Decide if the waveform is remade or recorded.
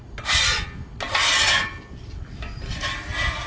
recorded